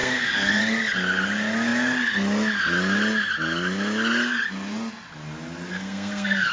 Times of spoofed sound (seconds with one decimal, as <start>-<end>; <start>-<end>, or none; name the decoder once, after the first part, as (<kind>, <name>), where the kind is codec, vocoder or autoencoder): 0.0-0.6 (codec, SNAC); 5.7-6.5